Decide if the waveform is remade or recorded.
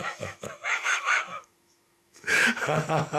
remade